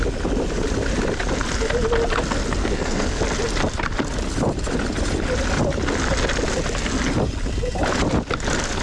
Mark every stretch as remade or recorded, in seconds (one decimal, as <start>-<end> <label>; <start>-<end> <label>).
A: 0.0-2.6 recorded; 2.6-3.2 remade; 3.2-8.8 recorded